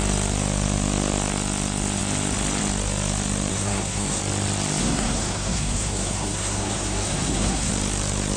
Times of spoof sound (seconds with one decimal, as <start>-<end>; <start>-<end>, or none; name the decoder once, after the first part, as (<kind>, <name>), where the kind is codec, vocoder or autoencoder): 3.5-4.2 (codec, SNAC); 4.8-7.7